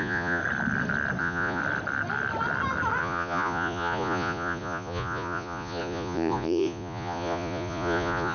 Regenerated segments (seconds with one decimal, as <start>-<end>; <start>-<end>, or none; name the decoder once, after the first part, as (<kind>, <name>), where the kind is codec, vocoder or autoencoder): 0.0-0.4 (vocoder, Vocos); 1.2-1.6; 3.0-8.3